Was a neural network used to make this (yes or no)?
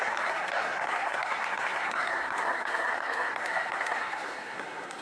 yes